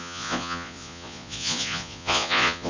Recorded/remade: remade